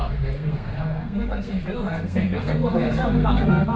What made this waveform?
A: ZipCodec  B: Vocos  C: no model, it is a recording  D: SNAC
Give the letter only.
D